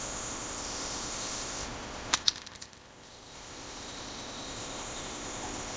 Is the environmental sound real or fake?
fake